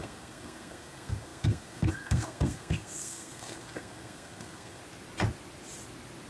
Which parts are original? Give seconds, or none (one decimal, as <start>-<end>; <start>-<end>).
4.8-6.3